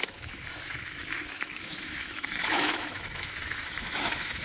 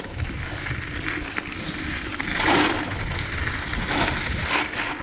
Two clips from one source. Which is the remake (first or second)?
first